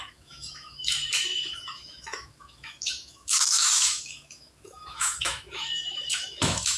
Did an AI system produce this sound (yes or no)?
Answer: yes